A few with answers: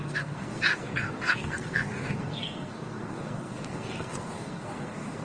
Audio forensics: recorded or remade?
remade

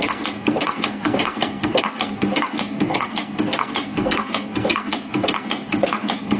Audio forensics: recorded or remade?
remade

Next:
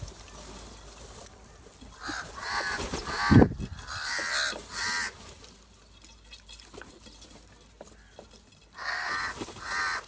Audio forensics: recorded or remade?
recorded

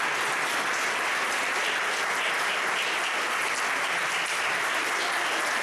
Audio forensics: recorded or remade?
recorded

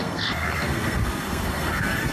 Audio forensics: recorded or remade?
remade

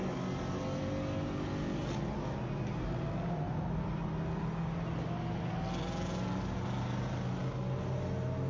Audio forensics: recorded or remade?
recorded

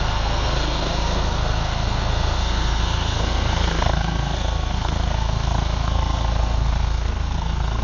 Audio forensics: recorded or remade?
remade